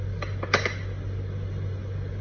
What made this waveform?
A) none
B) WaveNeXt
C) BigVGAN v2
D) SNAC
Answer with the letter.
A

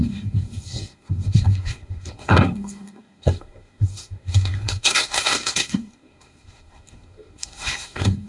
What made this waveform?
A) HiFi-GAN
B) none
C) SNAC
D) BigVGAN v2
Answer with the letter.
C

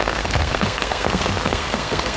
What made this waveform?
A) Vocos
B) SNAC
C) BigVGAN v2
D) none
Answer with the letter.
B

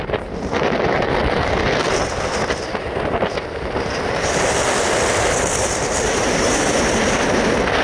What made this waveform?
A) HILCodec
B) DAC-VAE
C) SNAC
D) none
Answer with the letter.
D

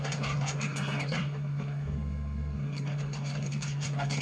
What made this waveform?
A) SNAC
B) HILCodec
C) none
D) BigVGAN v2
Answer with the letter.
A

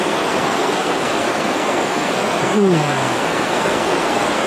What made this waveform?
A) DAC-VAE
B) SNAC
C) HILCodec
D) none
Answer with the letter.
B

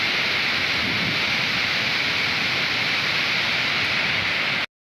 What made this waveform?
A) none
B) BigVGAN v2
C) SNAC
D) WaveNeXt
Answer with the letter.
A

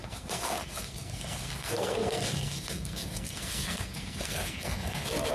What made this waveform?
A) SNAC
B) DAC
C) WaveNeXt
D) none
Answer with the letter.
A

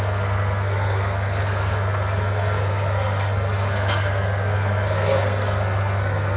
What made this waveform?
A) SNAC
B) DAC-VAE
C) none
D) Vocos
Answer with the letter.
A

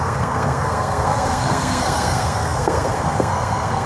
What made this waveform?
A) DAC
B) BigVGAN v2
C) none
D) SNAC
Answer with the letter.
D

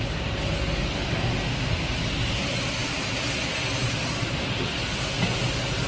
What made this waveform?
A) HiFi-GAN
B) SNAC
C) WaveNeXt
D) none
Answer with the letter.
D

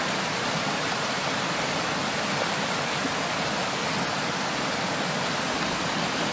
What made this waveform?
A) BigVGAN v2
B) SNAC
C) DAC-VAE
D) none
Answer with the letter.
D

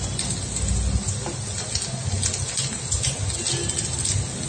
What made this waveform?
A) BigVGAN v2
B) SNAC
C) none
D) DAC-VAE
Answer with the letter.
C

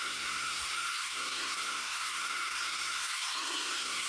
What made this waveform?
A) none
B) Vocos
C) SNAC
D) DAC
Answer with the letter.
C